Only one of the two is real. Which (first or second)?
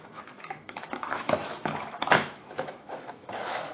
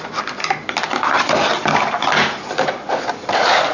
second